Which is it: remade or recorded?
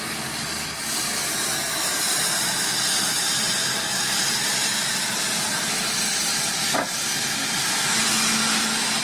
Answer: remade